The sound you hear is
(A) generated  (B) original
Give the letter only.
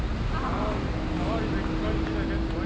B